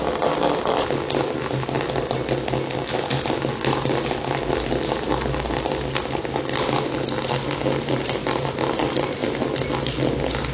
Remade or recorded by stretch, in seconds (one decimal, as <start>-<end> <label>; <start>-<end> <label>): 0.0-10.5 recorded